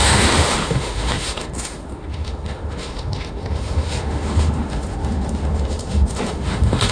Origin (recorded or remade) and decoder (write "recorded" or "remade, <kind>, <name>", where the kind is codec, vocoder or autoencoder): remade, autoencoder, DAC-VAE